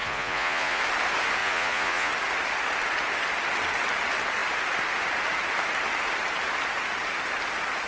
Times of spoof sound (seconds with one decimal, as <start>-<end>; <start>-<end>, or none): 0.0-0.8; 1.4-2.1